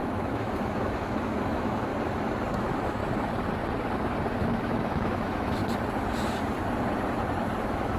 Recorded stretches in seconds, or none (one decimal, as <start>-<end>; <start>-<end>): 1.9-2.5; 3.0-4.4; 5.6-7.6